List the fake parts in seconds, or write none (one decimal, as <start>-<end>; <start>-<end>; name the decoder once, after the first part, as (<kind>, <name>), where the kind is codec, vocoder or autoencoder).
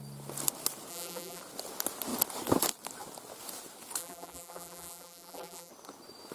0.9-1.4 (vocoder, BigVGAN v2); 4.0-5.7